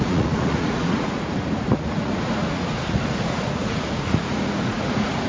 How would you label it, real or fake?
fake